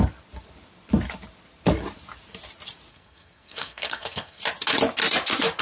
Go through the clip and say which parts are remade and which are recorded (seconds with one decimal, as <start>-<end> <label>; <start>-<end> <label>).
0.0-2.9 recorded; 2.9-4.4 remade; 4.4-5.6 recorded

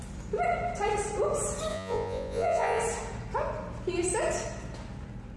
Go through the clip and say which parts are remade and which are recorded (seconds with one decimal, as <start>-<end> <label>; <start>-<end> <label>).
0.0-1.7 recorded; 1.7-2.8 remade; 2.8-5.4 recorded

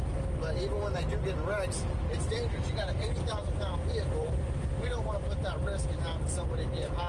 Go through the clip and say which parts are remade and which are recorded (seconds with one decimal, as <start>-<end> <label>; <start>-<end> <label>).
0.0-2.1 recorded; 2.1-5.8 remade; 5.8-7.1 recorded

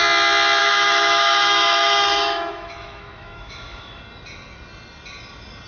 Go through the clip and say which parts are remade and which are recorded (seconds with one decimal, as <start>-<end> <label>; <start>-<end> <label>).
0.0-0.6 recorded; 0.6-4.0 remade; 4.0-5.7 recorded

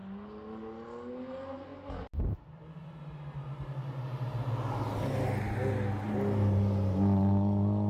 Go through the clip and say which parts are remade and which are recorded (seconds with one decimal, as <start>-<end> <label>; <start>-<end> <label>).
0.0-7.9 recorded

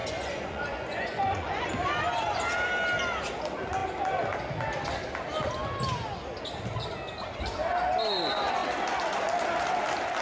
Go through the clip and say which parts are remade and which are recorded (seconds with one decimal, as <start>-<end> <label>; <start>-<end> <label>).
0.0-1.7 remade; 1.7-10.2 recorded

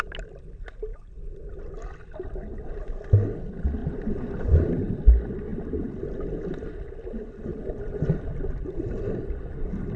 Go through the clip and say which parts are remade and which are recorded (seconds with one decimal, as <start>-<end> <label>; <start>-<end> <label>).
0.0-3.8 recorded; 3.8-5.0 remade; 5.0-7.5 recorded; 7.5-8.3 remade; 8.3-10.0 recorded